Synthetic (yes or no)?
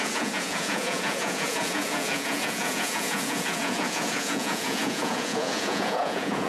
yes